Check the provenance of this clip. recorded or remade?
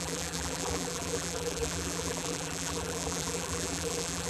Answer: remade